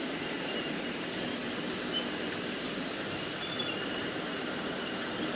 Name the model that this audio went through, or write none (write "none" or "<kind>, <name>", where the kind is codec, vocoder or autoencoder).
vocoder, BigVGAN v2